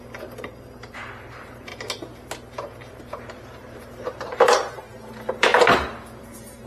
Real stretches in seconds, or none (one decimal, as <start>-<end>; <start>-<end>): 1.7-2.9; 5.5-6.2